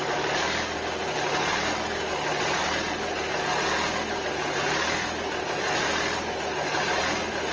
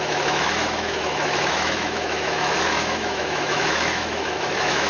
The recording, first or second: first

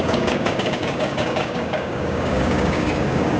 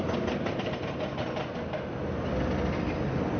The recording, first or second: second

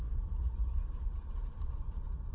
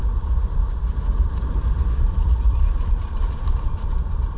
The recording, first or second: first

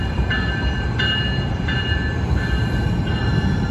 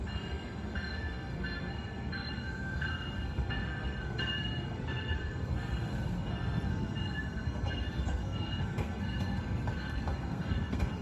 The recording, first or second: first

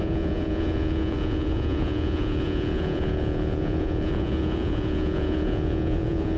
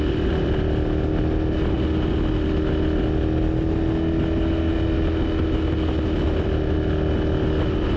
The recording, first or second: second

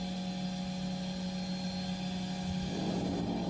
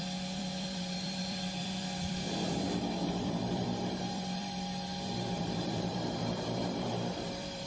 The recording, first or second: first